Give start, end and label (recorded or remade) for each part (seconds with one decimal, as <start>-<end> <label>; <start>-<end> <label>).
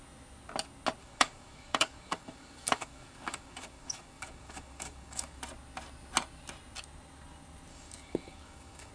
0.0-1.0 recorded; 1.0-5.4 remade; 5.4-7.7 recorded; 7.7-8.9 remade